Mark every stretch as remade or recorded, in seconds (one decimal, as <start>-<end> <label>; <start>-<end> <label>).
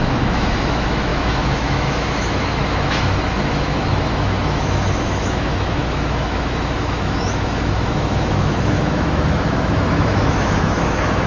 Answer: 0.0-11.3 remade